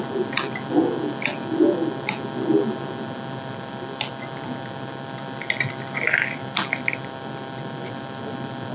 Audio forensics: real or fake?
real